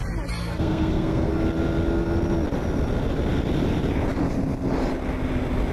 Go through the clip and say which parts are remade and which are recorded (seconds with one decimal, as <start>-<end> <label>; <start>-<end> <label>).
0.0-0.4 recorded; 0.4-1.3 remade; 1.3-5.7 recorded